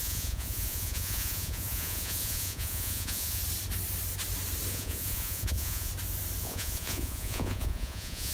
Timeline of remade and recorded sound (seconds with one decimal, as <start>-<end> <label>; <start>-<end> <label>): 0.0-3.4 remade; 3.4-4.7 recorded; 4.7-5.9 remade; 5.9-6.4 recorded; 6.4-8.3 remade